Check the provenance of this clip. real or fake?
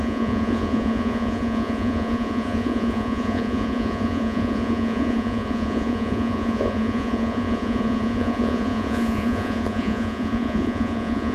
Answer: fake